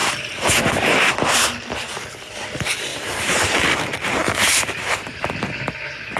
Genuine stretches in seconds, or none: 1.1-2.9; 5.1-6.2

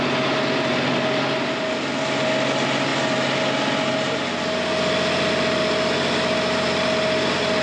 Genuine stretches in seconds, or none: 0.0-7.6

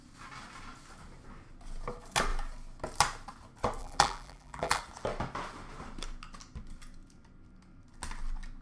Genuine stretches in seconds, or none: 0.0-3.8; 4.8-8.6

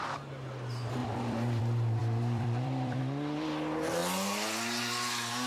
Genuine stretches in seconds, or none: 0.0-1.0; 1.6-2.0; 3.0-5.5